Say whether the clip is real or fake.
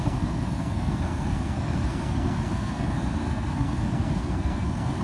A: fake